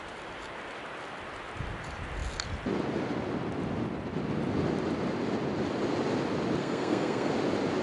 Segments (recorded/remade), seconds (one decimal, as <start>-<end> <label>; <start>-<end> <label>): 0.0-6.6 recorded; 6.6-7.3 remade; 7.3-7.8 recorded